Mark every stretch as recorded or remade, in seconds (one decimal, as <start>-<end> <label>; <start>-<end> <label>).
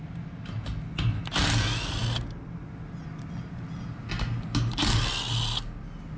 0.0-6.2 recorded